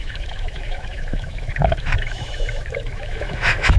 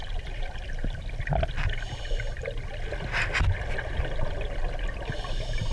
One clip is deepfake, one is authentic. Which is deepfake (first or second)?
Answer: first